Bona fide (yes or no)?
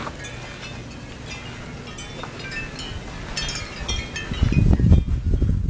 yes